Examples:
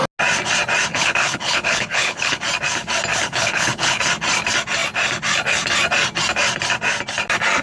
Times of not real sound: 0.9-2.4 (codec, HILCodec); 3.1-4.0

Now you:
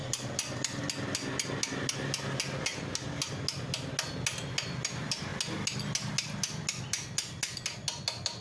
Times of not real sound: none